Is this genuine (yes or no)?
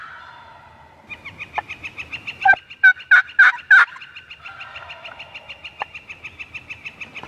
yes